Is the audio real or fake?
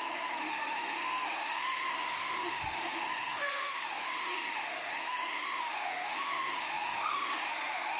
fake